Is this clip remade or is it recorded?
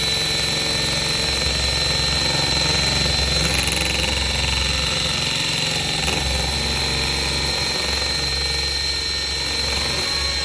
recorded